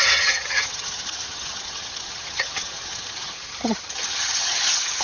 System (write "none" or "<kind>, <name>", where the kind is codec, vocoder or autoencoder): vocoder, HiFi-GAN